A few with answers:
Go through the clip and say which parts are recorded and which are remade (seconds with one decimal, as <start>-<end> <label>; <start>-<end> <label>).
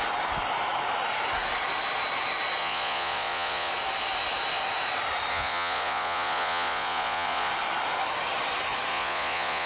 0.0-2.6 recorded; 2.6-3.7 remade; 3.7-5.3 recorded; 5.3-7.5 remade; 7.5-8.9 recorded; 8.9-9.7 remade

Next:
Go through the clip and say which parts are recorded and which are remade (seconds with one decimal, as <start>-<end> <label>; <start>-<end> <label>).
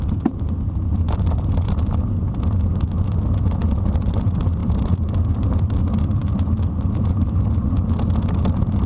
0.0-8.9 recorded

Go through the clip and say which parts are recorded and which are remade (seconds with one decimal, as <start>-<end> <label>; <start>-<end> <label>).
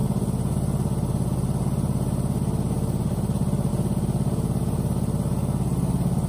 0.0-6.3 recorded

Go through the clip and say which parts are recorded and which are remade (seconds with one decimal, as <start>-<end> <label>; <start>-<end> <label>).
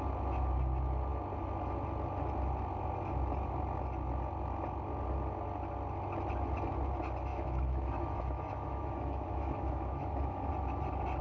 0.0-7.3 recorded; 7.3-10.5 remade; 10.5-11.2 recorded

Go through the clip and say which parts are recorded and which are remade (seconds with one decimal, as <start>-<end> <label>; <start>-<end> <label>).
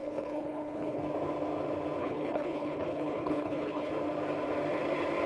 0.0-1.0 remade; 1.0-2.0 recorded; 2.0-3.9 remade; 3.9-5.3 recorded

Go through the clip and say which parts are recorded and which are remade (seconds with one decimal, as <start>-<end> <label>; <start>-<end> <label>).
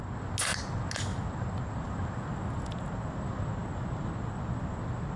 0.0-5.2 recorded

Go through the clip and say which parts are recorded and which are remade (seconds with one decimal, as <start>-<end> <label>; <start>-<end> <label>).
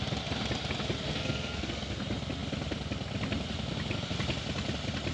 0.0-1.0 recorded; 1.0-2.0 remade; 2.0-5.1 recorded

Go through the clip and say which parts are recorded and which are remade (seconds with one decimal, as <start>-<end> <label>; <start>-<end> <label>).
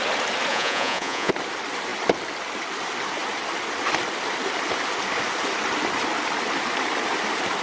0.0-0.5 recorded; 0.5-1.3 remade; 1.3-7.6 recorded